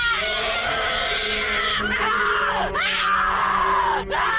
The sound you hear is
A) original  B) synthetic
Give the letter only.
A